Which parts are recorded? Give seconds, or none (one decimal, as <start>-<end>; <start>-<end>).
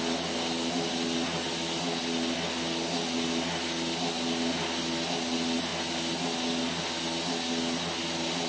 0.0-8.5